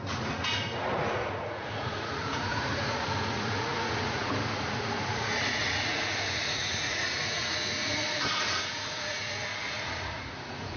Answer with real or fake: fake